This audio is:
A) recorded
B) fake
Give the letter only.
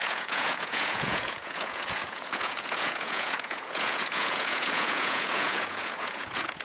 B